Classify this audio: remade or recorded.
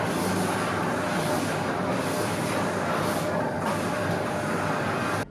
recorded